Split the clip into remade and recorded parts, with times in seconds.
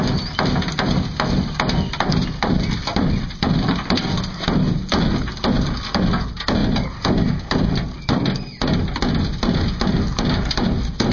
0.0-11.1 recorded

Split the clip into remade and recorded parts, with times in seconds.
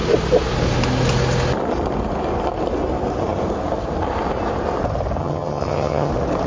0.0-5.2 recorded; 5.2-6.1 remade; 6.1-6.5 recorded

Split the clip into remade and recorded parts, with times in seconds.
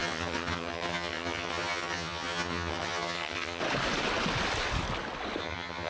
0.0-3.6 remade; 3.6-5.4 recorded; 5.4-5.9 remade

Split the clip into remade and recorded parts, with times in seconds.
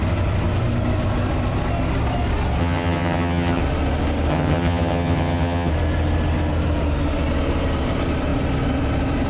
0.0-2.6 recorded; 2.6-3.6 remade; 3.6-4.3 recorded; 4.3-5.7 remade; 5.7-9.3 recorded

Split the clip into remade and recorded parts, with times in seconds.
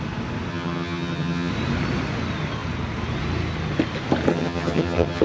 0.0-0.5 recorded; 0.5-1.5 remade; 1.5-4.3 recorded; 4.3-5.2 remade